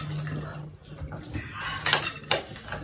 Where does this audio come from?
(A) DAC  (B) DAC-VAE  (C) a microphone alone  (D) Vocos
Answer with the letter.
C